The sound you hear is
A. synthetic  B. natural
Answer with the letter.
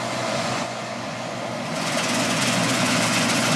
A